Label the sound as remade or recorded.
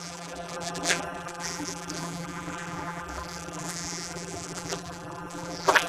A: remade